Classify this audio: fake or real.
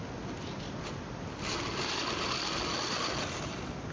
real